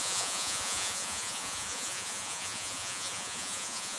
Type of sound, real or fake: fake